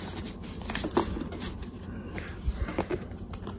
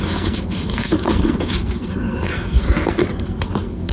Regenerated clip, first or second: second